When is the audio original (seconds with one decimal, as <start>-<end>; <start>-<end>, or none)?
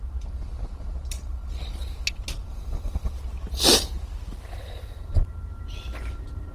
0.0-6.5